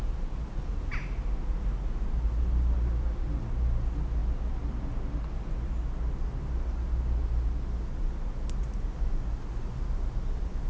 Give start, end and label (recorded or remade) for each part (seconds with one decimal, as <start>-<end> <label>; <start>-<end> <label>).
0.0-10.7 recorded